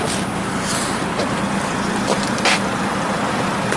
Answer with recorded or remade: recorded